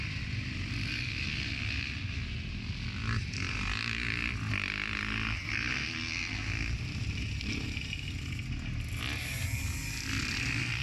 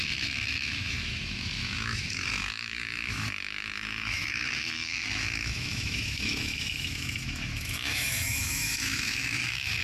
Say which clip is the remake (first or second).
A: second